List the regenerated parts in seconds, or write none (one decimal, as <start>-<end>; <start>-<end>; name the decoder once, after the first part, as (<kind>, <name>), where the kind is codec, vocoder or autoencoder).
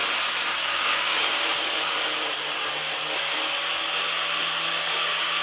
0.6-1.5 (codec, DAC); 4.7-5.4